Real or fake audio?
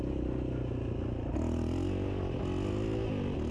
real